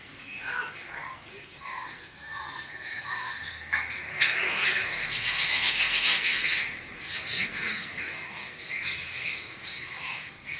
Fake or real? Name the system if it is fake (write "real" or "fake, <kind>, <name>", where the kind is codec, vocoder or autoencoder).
fake, codec, SNAC